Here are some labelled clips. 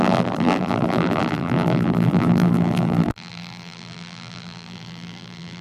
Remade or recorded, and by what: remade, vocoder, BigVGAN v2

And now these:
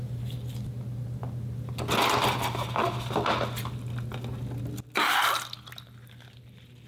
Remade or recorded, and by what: recorded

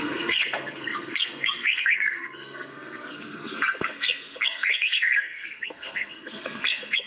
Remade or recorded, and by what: remade, codec, SNAC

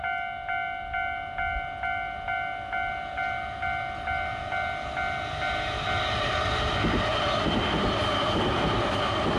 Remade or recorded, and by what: recorded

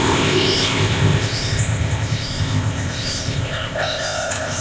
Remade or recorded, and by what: remade, codec, ZipCodec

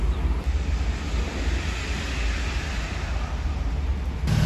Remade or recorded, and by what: recorded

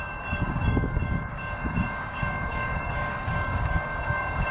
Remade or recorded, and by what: remade, codec, DAC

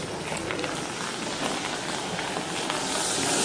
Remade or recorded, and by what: recorded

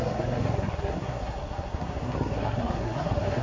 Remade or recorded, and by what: remade, codec, SNAC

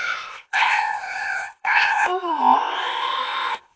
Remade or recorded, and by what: remade, codec, ZipCodec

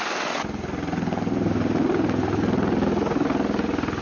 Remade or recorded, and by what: recorded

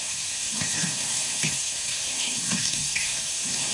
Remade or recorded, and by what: remade, codec, SNAC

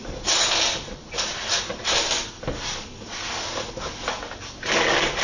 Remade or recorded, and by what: recorded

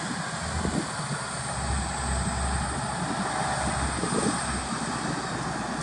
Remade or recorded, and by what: recorded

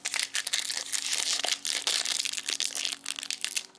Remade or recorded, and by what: recorded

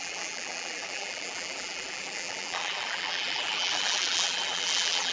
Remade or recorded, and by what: remade, vocoder, BigVGAN v2